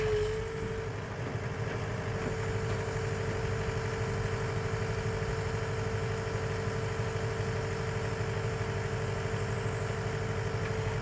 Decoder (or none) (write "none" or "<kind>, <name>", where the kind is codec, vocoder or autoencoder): none